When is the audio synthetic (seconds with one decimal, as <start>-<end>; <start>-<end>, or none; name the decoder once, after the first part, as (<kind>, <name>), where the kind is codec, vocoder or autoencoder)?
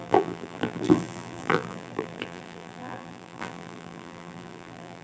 0.0-5.0 (vocoder, BigVGAN v2)